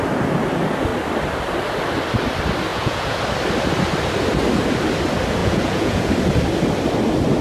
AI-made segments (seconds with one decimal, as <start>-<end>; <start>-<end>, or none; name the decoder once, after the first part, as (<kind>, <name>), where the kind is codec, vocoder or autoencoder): 2.7-3.2 (vocoder, Vocos); 5.4-6.1